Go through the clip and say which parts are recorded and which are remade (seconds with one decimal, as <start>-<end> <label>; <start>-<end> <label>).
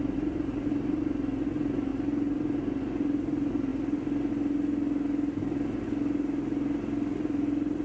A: 0.0-7.8 recorded